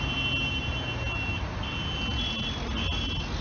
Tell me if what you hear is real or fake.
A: real